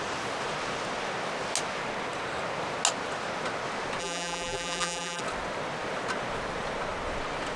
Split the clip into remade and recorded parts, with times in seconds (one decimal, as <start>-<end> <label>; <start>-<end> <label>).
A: 0.0-4.0 recorded; 4.0-5.2 remade; 5.2-7.6 recorded